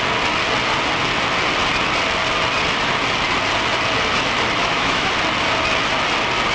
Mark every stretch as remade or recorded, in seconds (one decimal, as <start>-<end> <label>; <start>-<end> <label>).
0.0-4.6 recorded; 4.6-5.1 remade; 5.1-6.5 recorded